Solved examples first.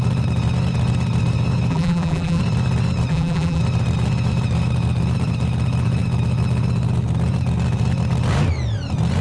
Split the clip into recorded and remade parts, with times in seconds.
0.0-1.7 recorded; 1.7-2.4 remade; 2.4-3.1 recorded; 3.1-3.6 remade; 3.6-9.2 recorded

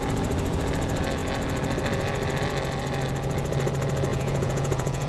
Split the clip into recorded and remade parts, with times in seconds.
0.0-4.1 recorded; 4.1-5.1 remade

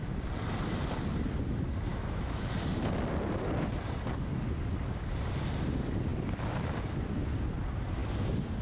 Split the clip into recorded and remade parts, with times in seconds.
0.0-1.9 recorded; 1.9-2.5 remade; 2.5-8.6 recorded

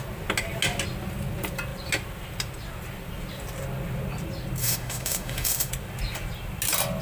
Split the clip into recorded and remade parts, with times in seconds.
0.0-4.6 recorded; 4.6-5.7 remade; 5.7-7.0 recorded

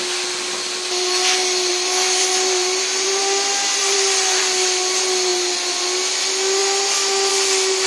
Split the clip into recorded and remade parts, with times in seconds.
0.0-1.7 recorded; 1.7-3.2 remade; 3.2-3.8 recorded; 3.8-4.4 remade; 4.4-5.3 recorded; 5.3-5.8 remade; 5.8-6.6 recorded; 6.6-7.3 remade; 7.3-7.9 recorded

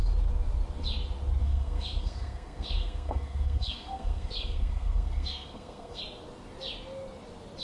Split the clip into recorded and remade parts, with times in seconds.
0.0-1.4 recorded; 1.4-6.0 remade; 6.0-7.6 recorded